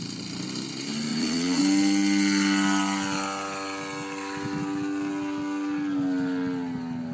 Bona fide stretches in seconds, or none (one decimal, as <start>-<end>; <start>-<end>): 0.0-1.1; 1.6-7.1

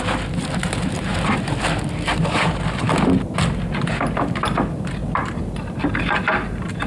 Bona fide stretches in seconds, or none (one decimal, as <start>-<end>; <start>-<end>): 0.0-6.9

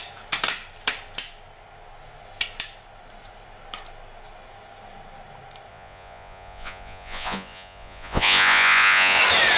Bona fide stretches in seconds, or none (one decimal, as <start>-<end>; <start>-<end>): 0.0-5.7; 9.2-9.6

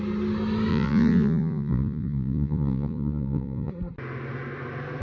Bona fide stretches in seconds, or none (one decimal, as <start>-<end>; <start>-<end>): 0.0-0.7; 3.7-5.0